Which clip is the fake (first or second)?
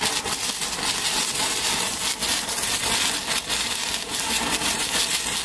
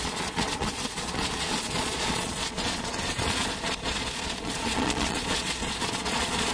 second